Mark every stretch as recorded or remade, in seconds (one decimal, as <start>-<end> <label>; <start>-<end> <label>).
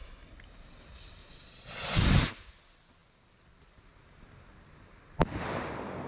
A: 0.0-1.2 recorded; 1.2-2.0 remade; 2.0-6.1 recorded